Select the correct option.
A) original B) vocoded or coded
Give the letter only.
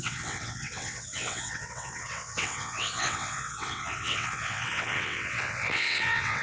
B